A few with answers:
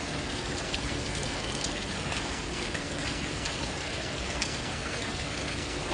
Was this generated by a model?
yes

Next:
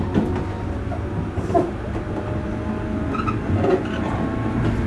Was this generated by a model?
no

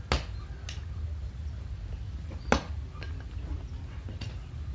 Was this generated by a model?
no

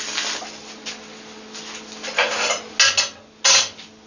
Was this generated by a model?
no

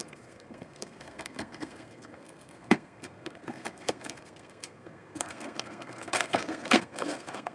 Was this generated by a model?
yes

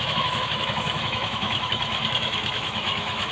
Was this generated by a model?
yes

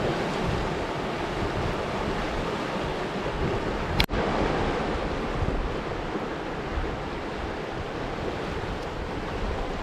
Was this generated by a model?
no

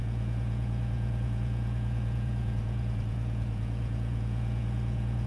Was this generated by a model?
yes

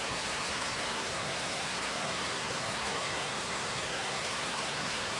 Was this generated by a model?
yes